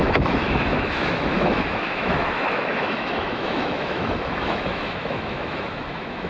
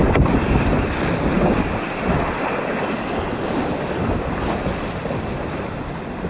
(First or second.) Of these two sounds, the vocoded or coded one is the first